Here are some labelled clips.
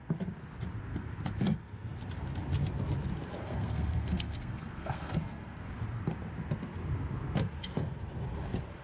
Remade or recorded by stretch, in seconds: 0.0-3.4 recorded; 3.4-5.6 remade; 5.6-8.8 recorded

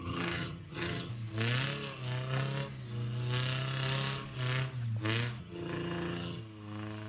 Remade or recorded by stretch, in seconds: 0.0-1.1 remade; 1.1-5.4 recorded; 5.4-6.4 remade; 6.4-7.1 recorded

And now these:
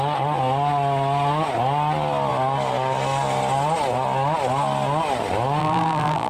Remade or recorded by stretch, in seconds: 0.0-5.6 recorded; 5.6-6.3 remade

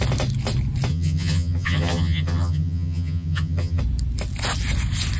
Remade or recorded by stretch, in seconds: 0.0-0.9 recorded; 0.9-3.8 remade; 3.8-5.2 recorded